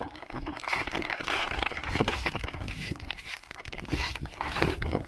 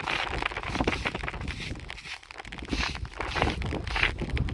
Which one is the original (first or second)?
second